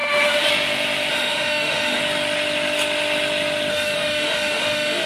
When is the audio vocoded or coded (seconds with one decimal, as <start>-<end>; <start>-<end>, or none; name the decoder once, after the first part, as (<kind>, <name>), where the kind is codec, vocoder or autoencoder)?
0.0-0.5 (autoencoder, DAC-VAE); 1.1-2.0; 3.7-5.1